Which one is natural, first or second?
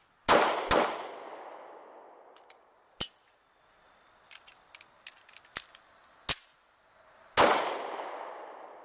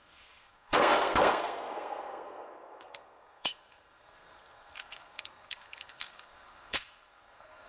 first